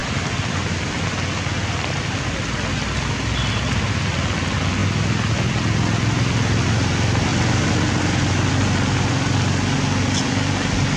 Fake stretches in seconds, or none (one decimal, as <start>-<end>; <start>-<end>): none